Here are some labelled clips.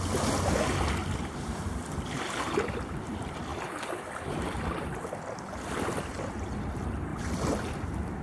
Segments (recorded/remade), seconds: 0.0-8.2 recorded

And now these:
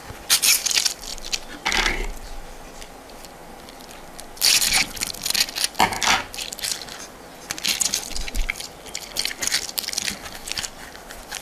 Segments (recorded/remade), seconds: 0.0-11.4 recorded

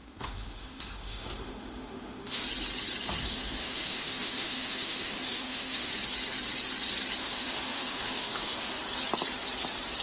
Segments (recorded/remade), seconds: 0.0-2.4 remade; 2.4-3.3 recorded; 3.3-5.9 remade; 5.9-7.2 recorded; 7.2-8.8 remade; 8.8-10.0 recorded

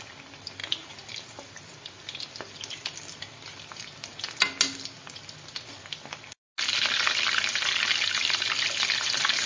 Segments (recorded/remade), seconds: 0.0-9.5 recorded